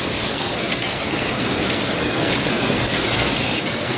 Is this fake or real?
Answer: fake